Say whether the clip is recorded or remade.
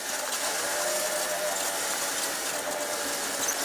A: recorded